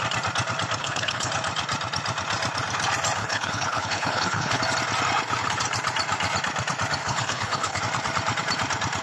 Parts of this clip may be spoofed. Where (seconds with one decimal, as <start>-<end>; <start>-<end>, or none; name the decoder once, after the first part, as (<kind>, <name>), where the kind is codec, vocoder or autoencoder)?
0.8-1.3 (codec, HILCodec); 3.2-4.6; 7.0-7.8